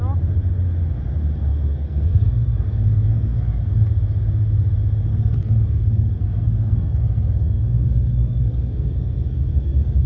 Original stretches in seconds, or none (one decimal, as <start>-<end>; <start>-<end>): 0.0-1.5; 3.9-5.1